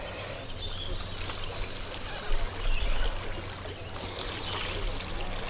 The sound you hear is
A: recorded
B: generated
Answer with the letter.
A